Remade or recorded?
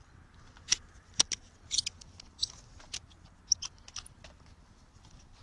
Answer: recorded